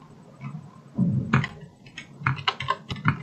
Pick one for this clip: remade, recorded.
recorded